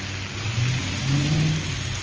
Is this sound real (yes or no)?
yes